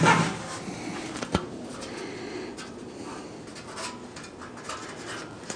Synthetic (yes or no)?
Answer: no